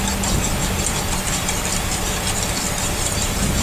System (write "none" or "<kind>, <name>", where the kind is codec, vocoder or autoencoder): none